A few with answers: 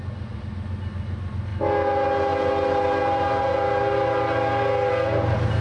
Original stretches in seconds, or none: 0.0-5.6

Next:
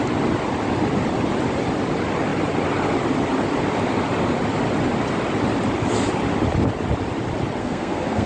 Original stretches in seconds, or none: 0.0-7.6

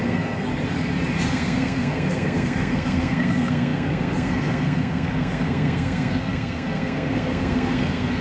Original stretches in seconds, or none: 0.5-1.3